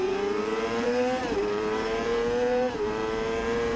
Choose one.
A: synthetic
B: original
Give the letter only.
A